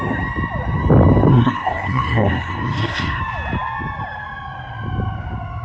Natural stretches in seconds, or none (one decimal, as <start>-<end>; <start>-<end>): 0.0-1.3; 3.2-5.6